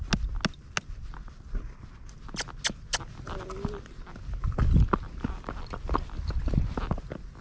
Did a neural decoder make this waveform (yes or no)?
no